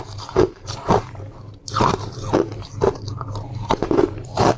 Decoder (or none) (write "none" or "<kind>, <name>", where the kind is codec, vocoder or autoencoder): vocoder, BigVGAN v2